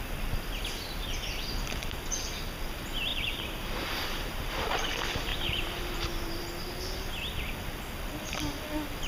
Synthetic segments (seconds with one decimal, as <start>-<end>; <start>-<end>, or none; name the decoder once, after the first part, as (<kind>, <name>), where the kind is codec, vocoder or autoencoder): 3.1-4.5 (vocoder, BigVGAN v2); 5.3-6.4